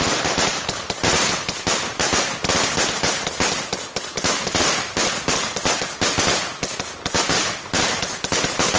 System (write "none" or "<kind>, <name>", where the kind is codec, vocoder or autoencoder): none